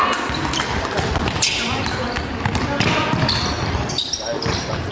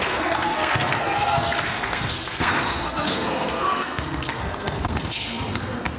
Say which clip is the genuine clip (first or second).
first